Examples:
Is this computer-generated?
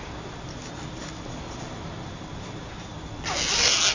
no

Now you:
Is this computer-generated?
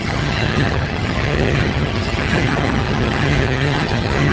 yes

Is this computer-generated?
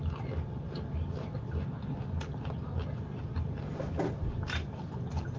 no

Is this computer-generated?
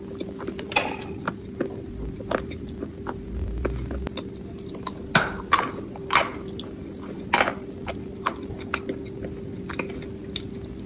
no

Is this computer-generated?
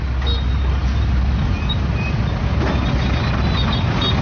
no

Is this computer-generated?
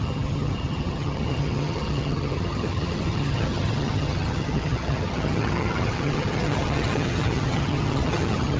yes